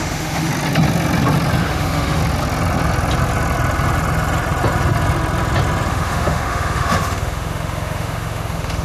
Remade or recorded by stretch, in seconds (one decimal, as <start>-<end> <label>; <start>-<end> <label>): 0.0-0.5 remade; 0.5-1.6 recorded; 1.6-2.2 remade; 2.2-5.9 recorded; 5.9-8.8 remade